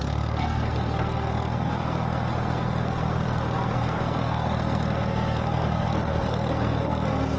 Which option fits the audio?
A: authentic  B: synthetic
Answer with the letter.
B